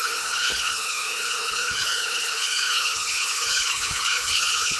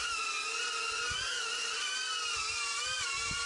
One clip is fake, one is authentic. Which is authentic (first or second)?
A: second